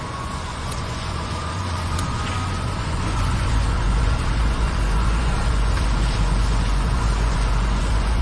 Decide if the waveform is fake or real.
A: fake